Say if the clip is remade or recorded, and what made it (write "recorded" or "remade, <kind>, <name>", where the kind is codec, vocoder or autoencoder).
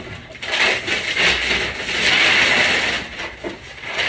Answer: recorded